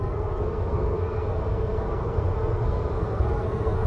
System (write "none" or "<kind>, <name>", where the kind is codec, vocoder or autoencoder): codec, SNAC